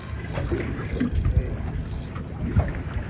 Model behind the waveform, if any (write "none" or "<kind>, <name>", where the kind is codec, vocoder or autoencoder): vocoder, BigVGAN v2